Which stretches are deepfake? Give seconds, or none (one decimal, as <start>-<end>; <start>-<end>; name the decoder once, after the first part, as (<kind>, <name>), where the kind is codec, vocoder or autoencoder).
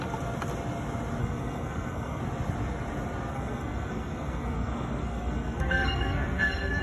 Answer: 1.2-2.2 (codec, SNAC); 3.3-6.8